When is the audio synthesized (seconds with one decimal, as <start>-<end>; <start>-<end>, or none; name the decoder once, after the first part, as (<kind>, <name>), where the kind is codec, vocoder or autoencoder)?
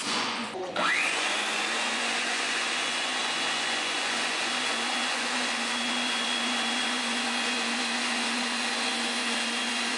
0.0-10.0 (vocoder, Vocos)